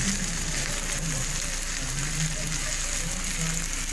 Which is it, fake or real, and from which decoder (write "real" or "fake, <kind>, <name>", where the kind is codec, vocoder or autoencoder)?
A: real